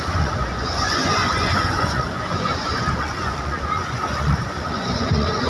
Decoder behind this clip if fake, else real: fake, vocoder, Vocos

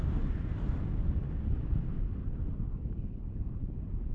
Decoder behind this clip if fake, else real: real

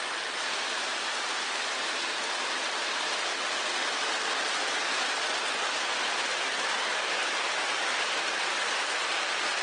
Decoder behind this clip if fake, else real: real